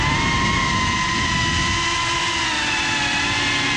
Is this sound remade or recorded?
recorded